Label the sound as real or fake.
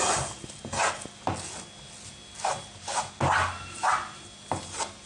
real